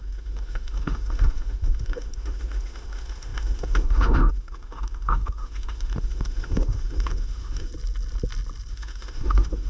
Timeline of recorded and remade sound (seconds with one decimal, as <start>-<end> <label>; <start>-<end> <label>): 0.0-7.7 remade; 7.7-8.7 recorded; 8.7-9.7 remade